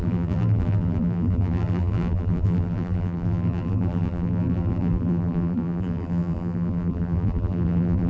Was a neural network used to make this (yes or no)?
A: yes